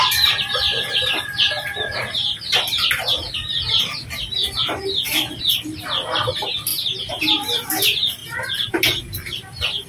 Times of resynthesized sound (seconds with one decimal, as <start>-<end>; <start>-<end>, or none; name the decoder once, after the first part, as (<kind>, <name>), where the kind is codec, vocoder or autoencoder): 0.0-8.2 (vocoder, BigVGAN v2); 9.0-9.9